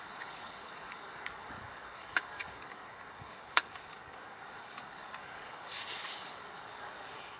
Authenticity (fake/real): fake